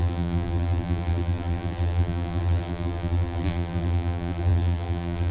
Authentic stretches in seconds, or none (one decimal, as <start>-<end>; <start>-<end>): none

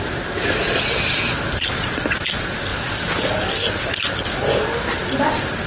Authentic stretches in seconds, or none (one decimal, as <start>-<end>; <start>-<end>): 0.0-5.7

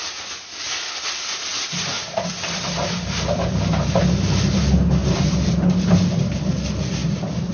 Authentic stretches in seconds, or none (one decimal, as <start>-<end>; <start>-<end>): 0.0-1.5; 4.0-5.0; 6.4-7.0

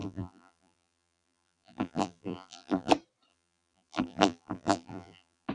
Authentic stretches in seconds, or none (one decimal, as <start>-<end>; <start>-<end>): 2.9-3.3

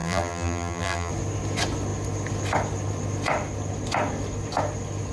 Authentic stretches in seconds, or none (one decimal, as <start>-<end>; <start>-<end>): 1.1-5.1

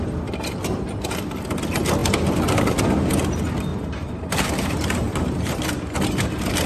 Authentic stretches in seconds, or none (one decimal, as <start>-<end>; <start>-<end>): 0.0-3.7; 5.8-6.7